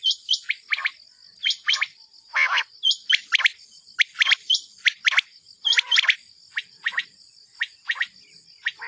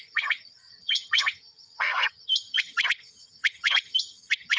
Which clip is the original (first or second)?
first